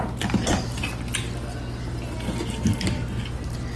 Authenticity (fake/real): real